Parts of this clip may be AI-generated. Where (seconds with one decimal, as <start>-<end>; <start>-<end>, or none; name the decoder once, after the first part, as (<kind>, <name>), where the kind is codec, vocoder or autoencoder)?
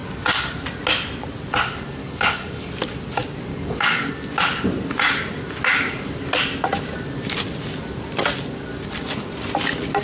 2.0-2.7 (codec, DAC); 3.5-4.1